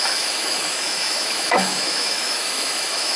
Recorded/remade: remade